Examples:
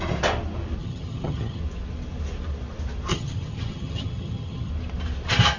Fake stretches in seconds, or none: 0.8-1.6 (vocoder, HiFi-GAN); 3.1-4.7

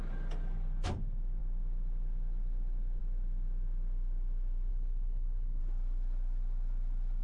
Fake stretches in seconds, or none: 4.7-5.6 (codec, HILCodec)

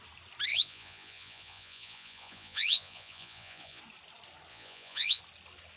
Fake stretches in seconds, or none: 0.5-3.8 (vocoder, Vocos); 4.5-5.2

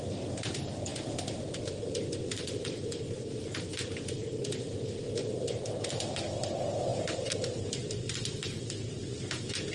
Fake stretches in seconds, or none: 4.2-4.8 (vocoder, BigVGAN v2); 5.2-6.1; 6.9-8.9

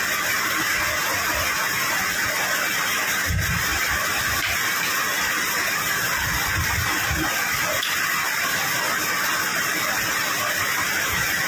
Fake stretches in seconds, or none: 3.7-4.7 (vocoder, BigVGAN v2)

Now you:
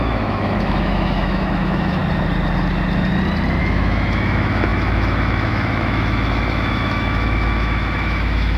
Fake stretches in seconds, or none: 0.0-2.0 (autoencoder, DAC-VAE); 3.6-8.6

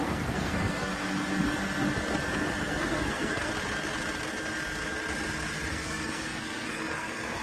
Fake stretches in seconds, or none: 0.0-0.9 (codec, SNAC); 2.6-3.5; 5.7-7.4